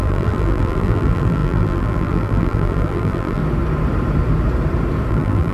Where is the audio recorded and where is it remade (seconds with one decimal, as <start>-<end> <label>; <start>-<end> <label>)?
0.0-3.4 remade; 3.4-5.1 recorded; 5.1-5.5 remade